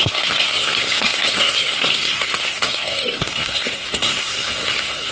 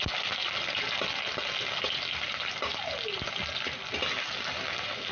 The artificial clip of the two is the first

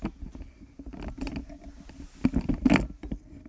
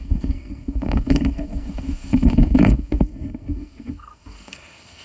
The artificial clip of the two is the second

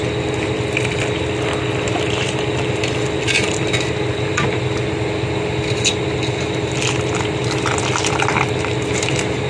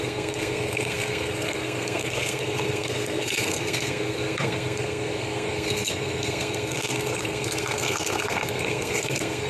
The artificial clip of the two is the second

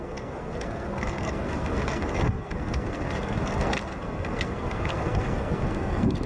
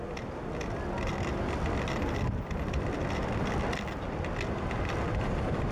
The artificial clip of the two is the first